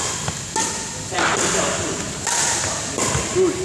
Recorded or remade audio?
recorded